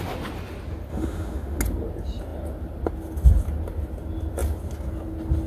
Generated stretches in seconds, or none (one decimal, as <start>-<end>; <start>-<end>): 0.9-1.6